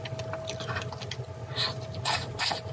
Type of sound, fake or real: real